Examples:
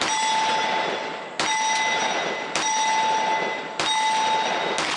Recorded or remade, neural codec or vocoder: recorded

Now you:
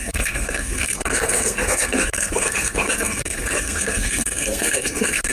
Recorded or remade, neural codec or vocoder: remade, codec, SNAC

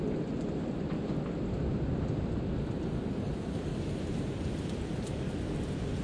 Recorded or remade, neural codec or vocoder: recorded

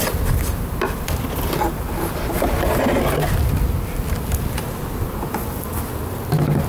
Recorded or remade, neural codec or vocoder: recorded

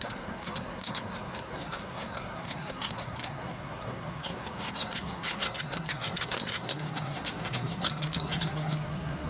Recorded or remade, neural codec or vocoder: remade, codec, SNAC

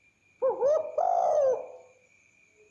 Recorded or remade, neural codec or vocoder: recorded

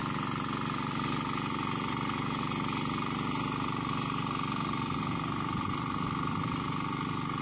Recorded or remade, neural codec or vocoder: recorded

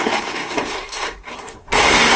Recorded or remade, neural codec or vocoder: remade, codec, SNAC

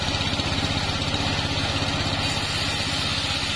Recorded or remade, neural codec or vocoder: recorded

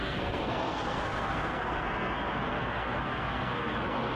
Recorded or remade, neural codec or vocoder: remade, codec, SNAC